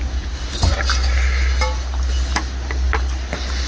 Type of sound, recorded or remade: recorded